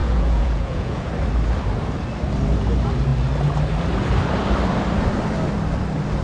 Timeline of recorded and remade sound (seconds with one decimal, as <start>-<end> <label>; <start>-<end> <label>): 0.0-1.1 remade; 1.1-6.2 recorded